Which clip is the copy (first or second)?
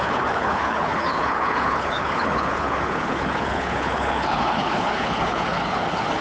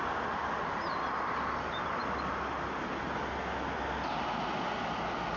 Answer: first